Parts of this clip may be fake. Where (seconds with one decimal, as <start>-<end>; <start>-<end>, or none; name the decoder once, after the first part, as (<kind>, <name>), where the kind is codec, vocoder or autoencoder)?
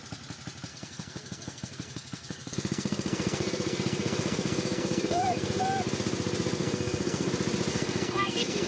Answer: 0.7-5.8 (codec, SNAC); 6.6-7.3; 7.7-8.7